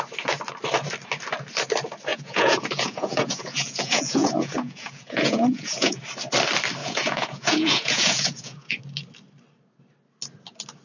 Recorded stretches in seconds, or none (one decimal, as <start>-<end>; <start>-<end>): 0.0-2.1; 6.0-6.8; 8.8-10.8